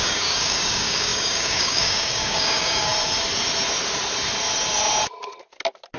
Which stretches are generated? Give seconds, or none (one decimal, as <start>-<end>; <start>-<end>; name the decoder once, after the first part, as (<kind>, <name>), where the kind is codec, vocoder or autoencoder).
0.0-2.9 (codec, DAC)